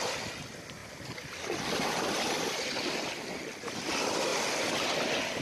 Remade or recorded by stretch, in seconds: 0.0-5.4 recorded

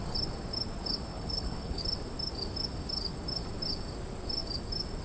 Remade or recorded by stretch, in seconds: 0.0-1.1 recorded; 1.1-1.8 remade; 1.8-5.0 recorded

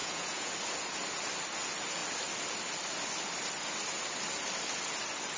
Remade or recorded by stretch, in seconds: 0.0-0.5 remade; 0.5-5.4 recorded

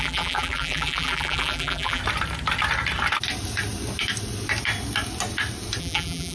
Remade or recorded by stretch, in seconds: 0.0-2.0 remade; 2.0-5.8 recorded; 5.8-6.3 remade

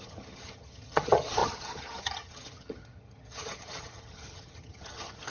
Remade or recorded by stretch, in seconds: 0.0-5.3 remade

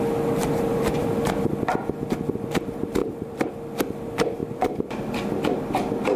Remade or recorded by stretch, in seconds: 0.0-0.4 recorded; 0.4-1.1 remade; 1.1-3.0 recorded; 3.0-3.5 remade; 3.5-4.4 recorded; 4.4-5.1 remade; 5.1-6.2 recorded

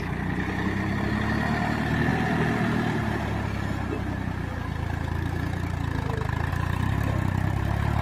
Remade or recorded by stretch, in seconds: 0.0-8.0 recorded

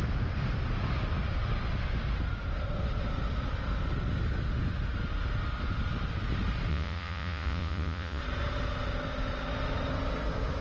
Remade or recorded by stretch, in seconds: 0.0-6.7 recorded; 6.7-8.2 remade; 8.2-10.6 recorded